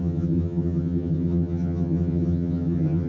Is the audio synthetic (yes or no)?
yes